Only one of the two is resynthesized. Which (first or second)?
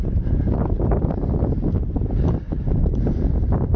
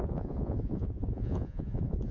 second